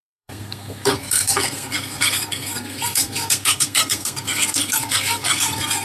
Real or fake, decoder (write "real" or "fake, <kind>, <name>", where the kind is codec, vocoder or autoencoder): fake, codec, SNAC